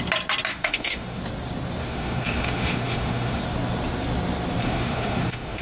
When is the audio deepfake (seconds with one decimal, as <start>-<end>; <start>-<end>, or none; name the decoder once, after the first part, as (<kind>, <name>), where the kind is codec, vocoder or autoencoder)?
0.5-1.2 (autoencoder, DAC-VAE); 1.8-3.4; 4.6-5.6